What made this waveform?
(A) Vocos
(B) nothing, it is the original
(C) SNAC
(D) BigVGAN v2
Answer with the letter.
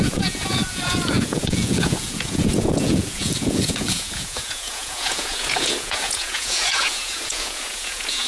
A